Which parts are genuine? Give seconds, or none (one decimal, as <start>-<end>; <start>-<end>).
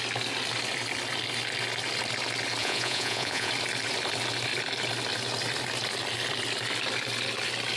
0.0-2.6; 3.5-7.8